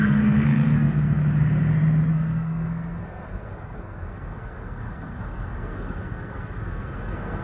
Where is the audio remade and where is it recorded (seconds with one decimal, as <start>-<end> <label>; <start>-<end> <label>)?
0.0-1.2 remade; 1.2-2.1 recorded; 2.1-7.4 remade